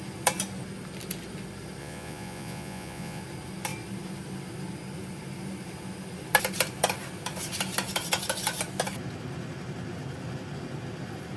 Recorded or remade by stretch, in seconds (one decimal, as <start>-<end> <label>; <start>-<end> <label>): 0.0-1.8 recorded; 1.8-3.2 remade; 3.2-11.4 recorded